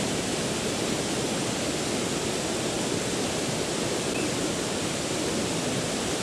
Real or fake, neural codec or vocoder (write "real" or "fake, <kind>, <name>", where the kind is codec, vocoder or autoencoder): real